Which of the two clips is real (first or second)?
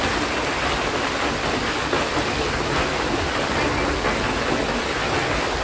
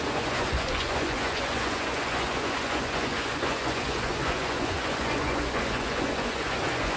first